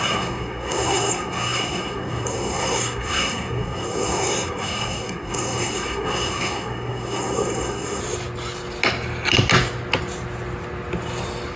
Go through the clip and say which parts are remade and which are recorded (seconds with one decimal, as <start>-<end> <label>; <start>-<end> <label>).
0.0-8.0 remade; 8.0-11.6 recorded